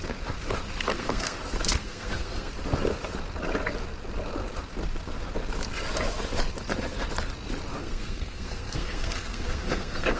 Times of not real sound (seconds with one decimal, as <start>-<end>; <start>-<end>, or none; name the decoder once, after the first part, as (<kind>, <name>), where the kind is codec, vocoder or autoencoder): 0.9-1.4 (codec, SNAC); 1.8-2.5; 7.8-10.2